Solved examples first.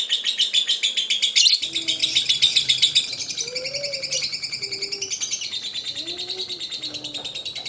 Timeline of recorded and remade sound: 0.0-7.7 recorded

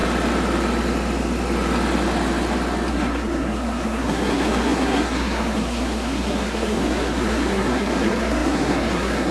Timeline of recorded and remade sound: 0.0-2.9 recorded; 2.9-9.3 remade

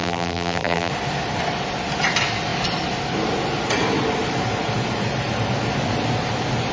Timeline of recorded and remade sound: 0.0-0.9 remade; 0.9-6.7 recorded

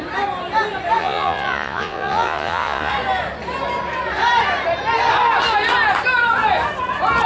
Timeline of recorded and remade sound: 0.0-1.0 recorded; 1.0-2.9 remade; 2.9-7.3 recorded

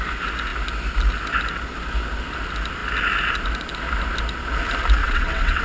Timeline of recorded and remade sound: 0.0-5.0 recorded; 5.0-5.6 remade

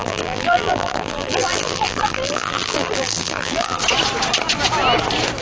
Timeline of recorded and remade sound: 0.0-3.8 remade; 3.8-5.4 recorded

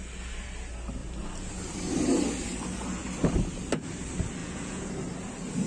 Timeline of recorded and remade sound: 0.0-4.4 recorded; 4.4-4.9 remade; 4.9-5.7 recorded

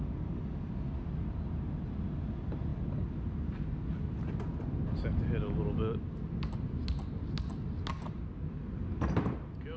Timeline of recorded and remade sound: 0.0-9.8 recorded